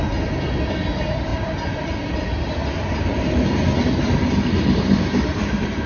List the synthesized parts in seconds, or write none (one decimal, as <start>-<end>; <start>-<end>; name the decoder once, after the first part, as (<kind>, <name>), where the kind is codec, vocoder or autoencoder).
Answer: 1.3-3.4 (vocoder, BigVGAN v2)